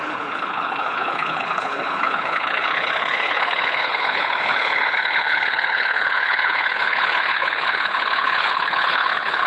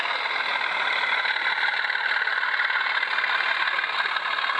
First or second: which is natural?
second